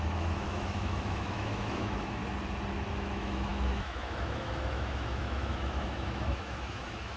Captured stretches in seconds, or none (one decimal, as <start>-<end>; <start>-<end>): 2.2-2.9